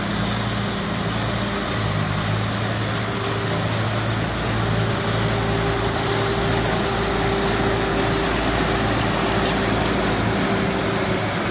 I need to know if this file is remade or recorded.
recorded